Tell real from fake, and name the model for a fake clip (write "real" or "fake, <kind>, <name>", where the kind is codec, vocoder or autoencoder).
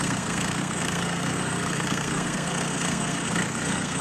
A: fake, codec, SNAC